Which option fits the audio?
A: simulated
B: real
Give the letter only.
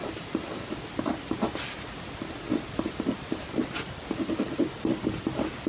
B